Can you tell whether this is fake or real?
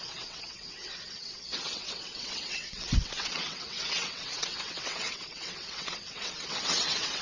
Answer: fake